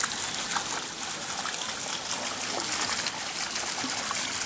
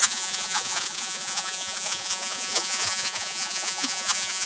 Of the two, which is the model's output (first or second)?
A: second